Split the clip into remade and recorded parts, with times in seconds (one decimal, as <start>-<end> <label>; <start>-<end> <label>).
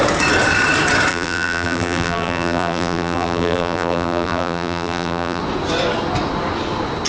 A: 0.0-1.1 recorded; 1.1-5.4 remade; 5.4-7.1 recorded